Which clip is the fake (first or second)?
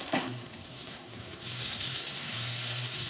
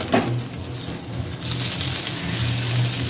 first